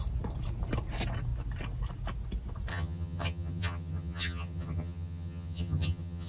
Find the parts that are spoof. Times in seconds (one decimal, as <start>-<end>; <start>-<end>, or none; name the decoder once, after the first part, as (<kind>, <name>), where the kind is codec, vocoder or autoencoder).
2.7-6.3 (vocoder, HiFi-GAN)